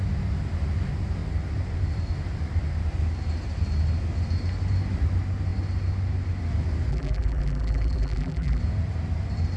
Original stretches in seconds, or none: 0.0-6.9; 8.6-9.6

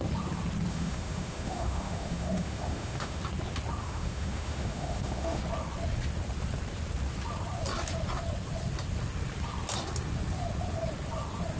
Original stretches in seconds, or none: 0.0-0.7; 3.2-3.8; 5.4-11.6

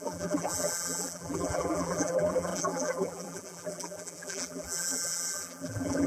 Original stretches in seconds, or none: none

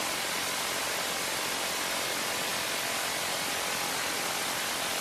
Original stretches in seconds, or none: 0.0-5.0

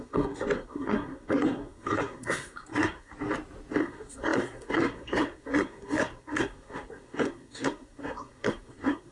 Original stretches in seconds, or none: 3.1-3.8

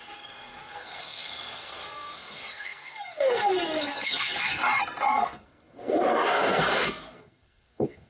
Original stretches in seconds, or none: 4.6-5.1

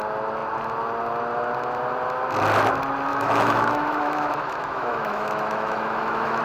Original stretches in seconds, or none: 0.0-3.1

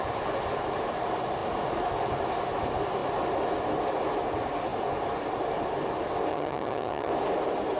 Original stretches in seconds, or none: 0.0-6.3; 7.1-7.8